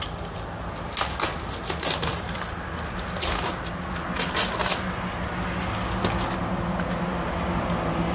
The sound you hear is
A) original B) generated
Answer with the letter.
A